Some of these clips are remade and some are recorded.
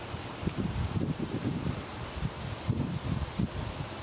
recorded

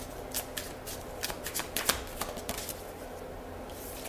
recorded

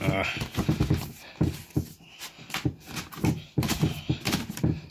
recorded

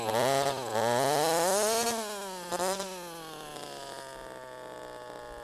recorded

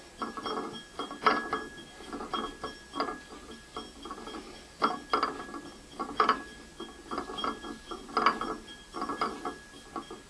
recorded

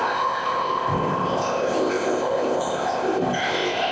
remade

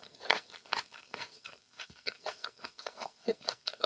remade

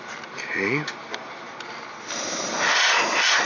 recorded